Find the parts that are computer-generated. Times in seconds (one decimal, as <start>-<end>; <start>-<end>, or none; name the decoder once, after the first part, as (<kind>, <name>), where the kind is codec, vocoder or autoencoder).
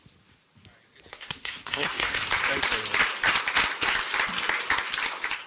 1.1-2.2 (codec, SNAC)